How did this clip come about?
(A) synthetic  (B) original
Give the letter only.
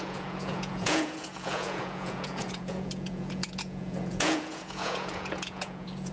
A